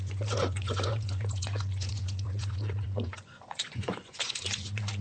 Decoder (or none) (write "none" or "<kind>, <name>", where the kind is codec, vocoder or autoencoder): vocoder, Vocos